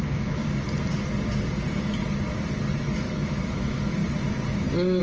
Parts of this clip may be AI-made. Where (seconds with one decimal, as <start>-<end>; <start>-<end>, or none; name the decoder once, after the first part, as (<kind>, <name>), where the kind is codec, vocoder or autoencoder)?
0.0-0.4 (autoencoder, DAC-VAE); 2.8-4.0